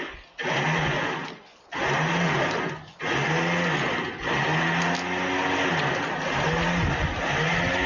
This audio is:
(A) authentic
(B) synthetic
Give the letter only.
A